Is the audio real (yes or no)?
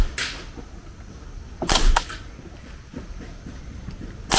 yes